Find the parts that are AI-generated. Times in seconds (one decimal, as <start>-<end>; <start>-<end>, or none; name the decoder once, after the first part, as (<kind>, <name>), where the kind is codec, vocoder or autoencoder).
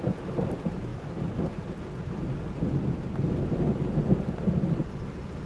0.0-0.9 (vocoder, BigVGAN v2); 4.2-5.5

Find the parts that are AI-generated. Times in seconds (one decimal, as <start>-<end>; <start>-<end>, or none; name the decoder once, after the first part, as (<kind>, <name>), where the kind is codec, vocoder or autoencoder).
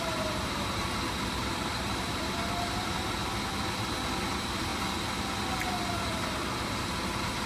0.0-0.8 (vocoder, BigVGAN v2); 1.4-3.2; 4.3-4.7; 5.9-7.5